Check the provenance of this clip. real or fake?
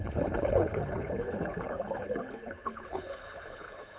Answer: fake